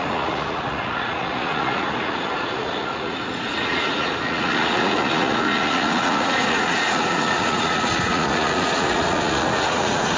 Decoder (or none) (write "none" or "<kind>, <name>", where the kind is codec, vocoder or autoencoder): vocoder, Vocos